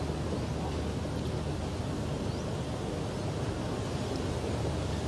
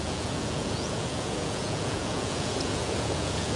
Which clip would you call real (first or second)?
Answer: first